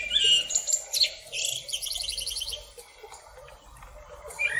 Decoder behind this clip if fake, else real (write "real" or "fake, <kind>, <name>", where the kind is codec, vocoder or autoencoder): fake, vocoder, BigVGAN v2